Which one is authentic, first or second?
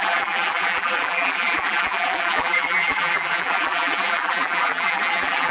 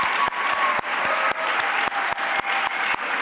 second